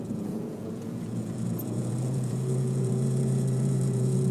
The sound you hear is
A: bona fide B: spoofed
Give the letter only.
B